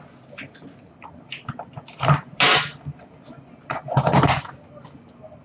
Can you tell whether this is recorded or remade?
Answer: recorded